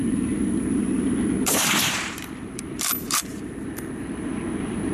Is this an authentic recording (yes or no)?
no